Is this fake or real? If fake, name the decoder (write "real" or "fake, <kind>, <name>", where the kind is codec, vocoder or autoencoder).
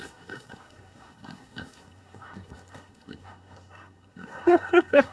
fake, codec, SNAC